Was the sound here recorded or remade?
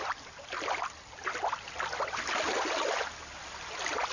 recorded